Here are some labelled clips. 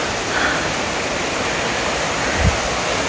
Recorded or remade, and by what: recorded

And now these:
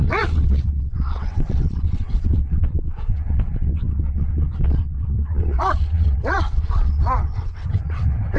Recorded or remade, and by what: remade, vocoder, WaveNeXt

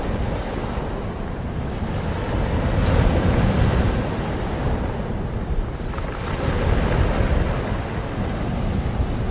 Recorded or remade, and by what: recorded